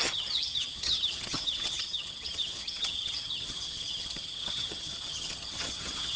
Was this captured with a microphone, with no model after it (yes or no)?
no